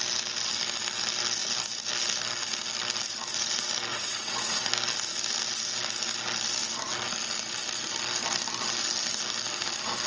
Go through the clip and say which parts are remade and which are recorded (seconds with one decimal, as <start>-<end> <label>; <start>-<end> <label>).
0.0-3.9 recorded; 3.9-4.7 remade; 4.7-10.1 recorded